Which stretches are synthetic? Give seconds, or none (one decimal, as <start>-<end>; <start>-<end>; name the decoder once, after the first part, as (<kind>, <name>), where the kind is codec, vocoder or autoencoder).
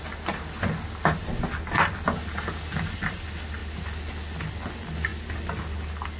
none